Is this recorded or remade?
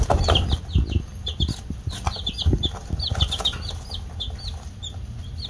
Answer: recorded